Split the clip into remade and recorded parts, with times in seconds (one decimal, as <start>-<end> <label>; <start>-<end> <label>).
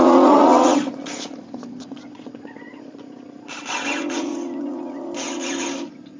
0.0-6.2 remade